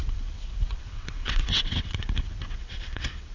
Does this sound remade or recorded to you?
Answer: remade